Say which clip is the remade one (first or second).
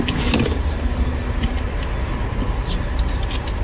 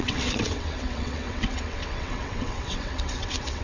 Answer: second